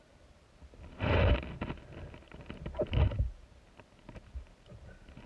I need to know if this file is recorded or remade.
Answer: recorded